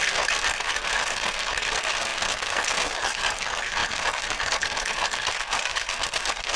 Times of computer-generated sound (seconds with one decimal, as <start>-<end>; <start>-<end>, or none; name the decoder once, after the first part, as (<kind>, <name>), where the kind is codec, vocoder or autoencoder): 0.0-6.6 (codec, SNAC)